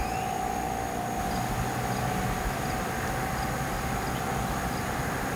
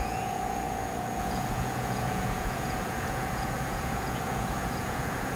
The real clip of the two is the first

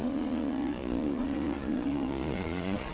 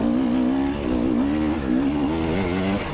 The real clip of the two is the second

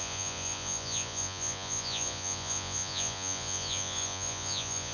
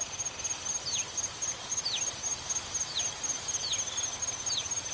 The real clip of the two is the second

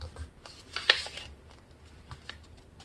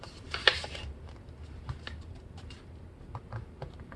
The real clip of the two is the first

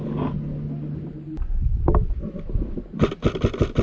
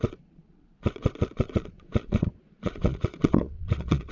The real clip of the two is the first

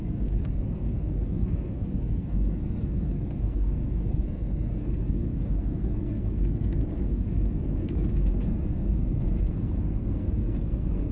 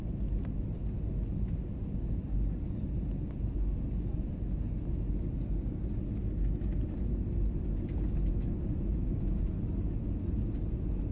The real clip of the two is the second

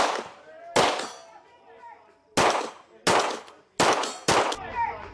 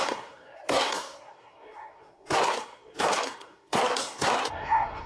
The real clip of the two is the first